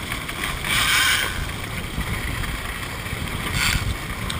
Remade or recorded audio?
recorded